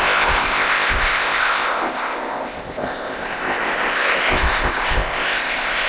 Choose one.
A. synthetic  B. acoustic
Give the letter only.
A